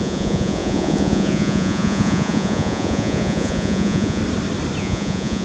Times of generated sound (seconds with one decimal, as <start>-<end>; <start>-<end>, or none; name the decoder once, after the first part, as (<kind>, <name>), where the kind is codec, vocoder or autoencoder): 0.0-4.2 (vocoder, Vocos); 4.8-5.4